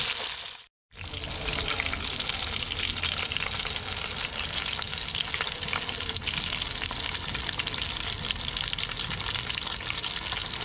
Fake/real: real